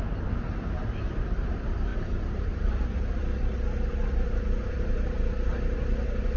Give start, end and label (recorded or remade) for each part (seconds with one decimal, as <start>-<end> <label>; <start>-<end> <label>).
0.0-1.9 recorded; 1.9-3.2 remade; 3.2-3.8 recorded; 3.8-5.5 remade; 5.5-6.4 recorded